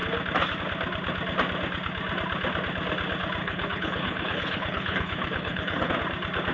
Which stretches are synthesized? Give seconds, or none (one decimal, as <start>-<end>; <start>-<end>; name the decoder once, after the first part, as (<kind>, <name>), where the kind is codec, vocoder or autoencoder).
3.4-5.9 (codec, HILCodec)